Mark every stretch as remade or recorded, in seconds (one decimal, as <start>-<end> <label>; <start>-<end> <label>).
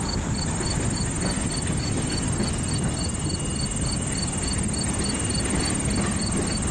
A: 0.0-6.7 recorded